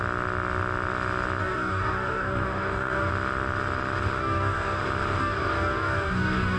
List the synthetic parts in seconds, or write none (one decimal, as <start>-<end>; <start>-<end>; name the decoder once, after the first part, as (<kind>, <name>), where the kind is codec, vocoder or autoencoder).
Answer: 1.4-3.1 (codec, DAC); 4.2-4.8; 5.2-6.6